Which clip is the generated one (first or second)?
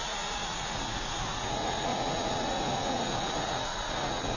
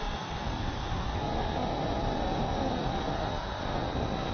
first